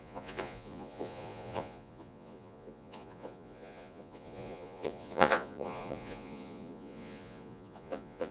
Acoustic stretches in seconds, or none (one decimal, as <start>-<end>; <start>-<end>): none